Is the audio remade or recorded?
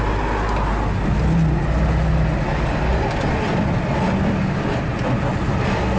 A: recorded